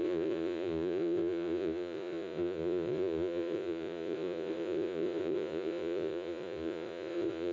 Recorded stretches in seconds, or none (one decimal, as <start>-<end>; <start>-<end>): none